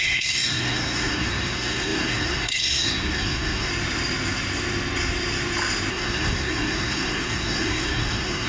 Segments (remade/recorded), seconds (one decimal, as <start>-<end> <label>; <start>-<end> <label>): 0.0-3.7 remade; 3.7-5.9 recorded; 5.9-8.5 remade